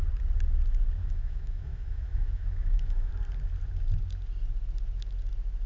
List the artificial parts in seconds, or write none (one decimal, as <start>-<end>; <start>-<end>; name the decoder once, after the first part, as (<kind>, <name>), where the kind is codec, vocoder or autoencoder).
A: 1.0-3.1 (autoencoder, DAC-VAE)